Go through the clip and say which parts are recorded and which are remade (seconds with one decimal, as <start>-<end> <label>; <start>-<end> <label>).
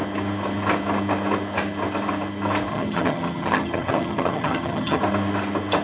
0.0-2.7 recorded; 2.7-5.0 remade; 5.0-5.8 recorded